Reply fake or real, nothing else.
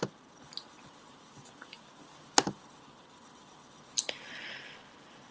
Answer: real